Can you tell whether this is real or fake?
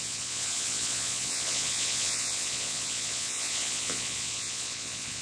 fake